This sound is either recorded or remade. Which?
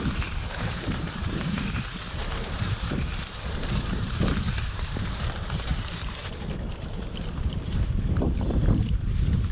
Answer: remade